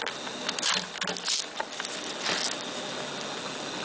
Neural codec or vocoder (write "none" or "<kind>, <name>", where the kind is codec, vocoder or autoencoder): none